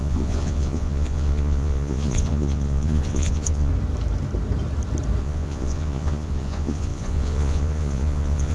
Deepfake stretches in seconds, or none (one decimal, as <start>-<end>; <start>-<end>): 0.0-3.7; 5.2-8.5